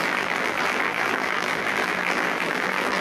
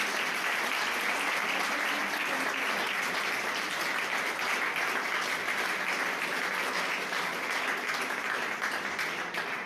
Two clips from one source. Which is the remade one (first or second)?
first